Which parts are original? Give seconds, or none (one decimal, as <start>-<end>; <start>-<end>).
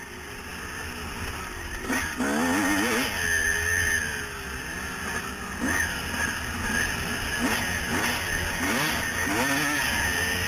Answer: 0.0-10.5